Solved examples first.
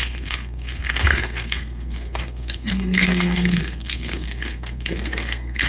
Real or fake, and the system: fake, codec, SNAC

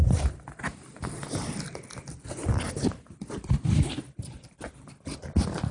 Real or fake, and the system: real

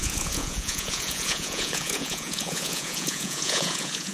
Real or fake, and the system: fake, vocoder, Vocos